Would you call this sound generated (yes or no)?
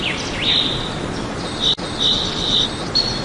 no